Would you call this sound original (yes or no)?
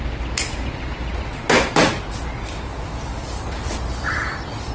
yes